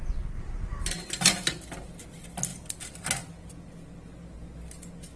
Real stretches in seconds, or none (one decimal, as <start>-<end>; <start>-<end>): 0.0-5.2